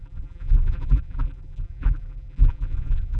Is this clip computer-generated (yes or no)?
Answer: yes